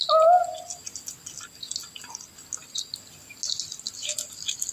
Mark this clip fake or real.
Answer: real